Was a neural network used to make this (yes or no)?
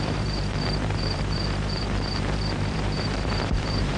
yes